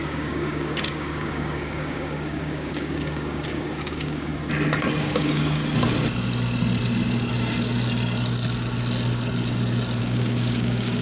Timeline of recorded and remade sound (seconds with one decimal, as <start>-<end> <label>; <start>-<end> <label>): 0.0-4.3 remade; 4.3-5.0 recorded; 5.0-5.6 remade; 5.6-10.0 recorded; 10.0-11.0 remade